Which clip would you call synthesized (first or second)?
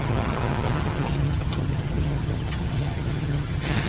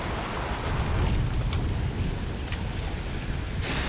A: first